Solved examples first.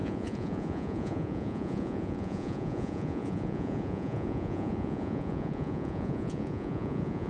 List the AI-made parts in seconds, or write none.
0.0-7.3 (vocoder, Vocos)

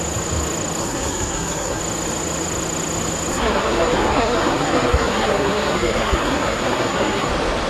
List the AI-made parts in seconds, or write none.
0.8-1.8 (codec, SNAC); 3.3-7.3

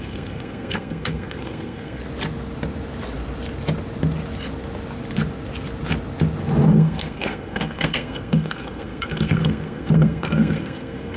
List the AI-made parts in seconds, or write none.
0.0-2.0 (codec, SNAC); 6.7-11.2

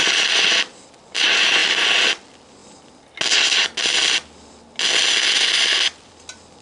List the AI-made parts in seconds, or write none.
none

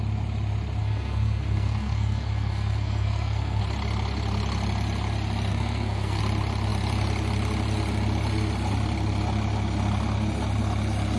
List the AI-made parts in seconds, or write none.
0.8-3.6 (codec, SNAC); 5.5-6.2